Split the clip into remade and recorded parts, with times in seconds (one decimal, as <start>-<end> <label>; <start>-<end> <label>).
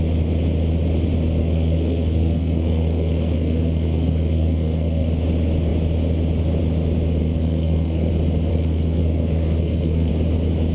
0.0-1.4 recorded; 1.4-5.1 remade; 5.1-7.2 recorded; 7.2-8.1 remade; 8.1-8.5 recorded; 8.5-10.1 remade; 10.1-10.7 recorded